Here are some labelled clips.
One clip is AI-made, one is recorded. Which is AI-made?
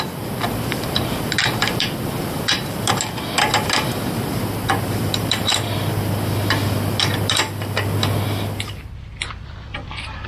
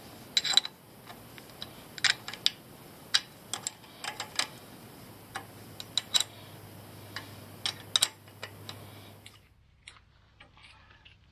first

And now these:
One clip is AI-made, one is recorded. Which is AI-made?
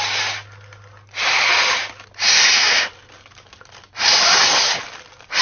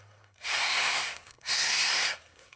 second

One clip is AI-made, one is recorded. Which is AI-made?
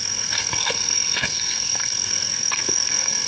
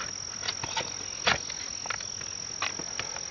first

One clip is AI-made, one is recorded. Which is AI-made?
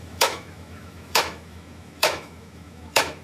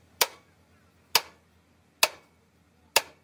first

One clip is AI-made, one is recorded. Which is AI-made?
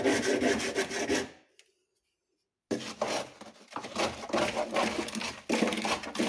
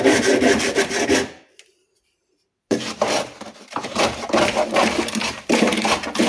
second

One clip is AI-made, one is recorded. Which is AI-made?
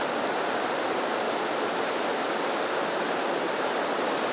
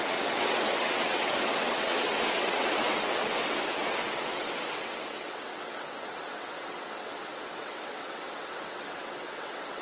second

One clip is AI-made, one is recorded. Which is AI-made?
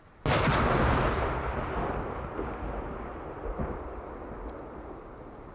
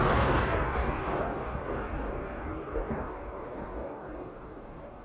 second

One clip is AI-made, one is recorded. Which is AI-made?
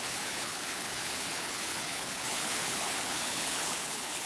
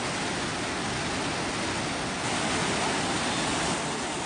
first